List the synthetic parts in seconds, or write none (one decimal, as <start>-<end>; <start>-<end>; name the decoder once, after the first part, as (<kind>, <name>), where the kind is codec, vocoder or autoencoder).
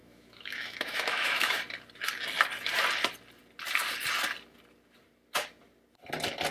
0.0-1.6 (autoencoder, DAC-VAE)